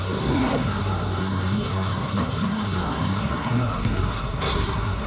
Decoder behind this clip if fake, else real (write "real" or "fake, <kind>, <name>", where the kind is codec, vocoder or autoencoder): fake, codec, SNAC